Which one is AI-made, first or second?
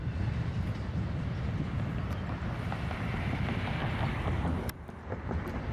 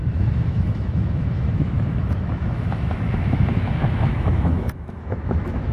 second